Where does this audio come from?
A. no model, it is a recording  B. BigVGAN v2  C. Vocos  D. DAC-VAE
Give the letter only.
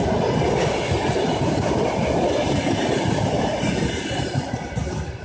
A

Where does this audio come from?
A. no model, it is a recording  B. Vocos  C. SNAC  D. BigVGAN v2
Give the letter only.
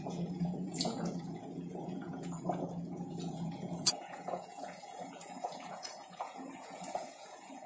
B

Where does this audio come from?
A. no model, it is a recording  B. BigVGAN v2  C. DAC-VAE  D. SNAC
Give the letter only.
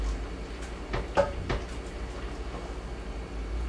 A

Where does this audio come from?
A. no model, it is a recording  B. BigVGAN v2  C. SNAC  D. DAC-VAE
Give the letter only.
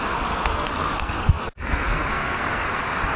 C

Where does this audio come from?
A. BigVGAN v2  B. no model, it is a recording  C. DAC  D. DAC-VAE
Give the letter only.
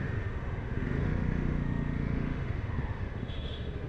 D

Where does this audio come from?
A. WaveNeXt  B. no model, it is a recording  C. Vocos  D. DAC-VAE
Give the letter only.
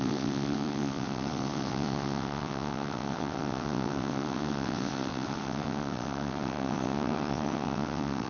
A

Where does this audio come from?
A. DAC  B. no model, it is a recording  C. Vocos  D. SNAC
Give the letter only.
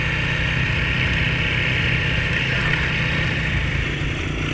B